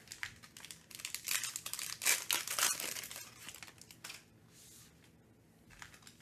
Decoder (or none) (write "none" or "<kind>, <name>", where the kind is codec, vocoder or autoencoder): none